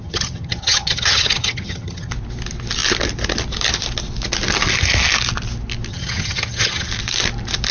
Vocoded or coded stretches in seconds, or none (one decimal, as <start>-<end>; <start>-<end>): 0.0-2.1; 5.9-6.9